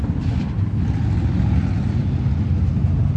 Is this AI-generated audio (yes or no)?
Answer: no